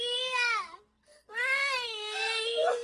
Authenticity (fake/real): fake